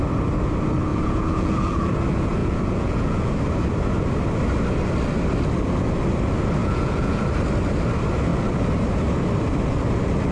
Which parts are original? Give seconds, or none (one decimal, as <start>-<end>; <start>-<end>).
0.0-0.9; 1.9-2.4; 3.3-6.6; 7.2-10.3